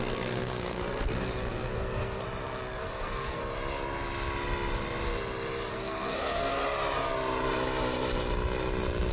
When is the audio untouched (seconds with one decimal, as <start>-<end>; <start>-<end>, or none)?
2.2-2.8; 3.4-5.7; 6.6-9.1